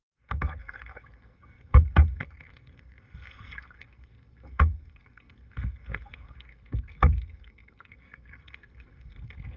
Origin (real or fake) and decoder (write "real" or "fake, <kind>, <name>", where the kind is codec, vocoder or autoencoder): fake, codec, SNAC